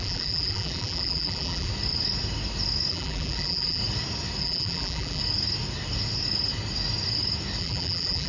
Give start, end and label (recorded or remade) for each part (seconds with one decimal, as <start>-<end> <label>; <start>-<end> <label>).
0.0-1.7 remade; 1.7-2.9 recorded; 2.9-3.8 remade; 3.8-4.4 recorded; 4.4-5.2 remade; 5.2-7.6 recorded; 7.6-8.3 remade

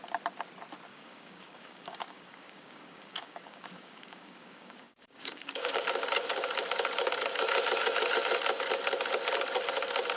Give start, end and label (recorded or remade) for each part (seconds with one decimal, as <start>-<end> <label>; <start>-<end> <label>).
0.0-0.9 recorded; 0.9-5.8 remade; 5.8-10.2 recorded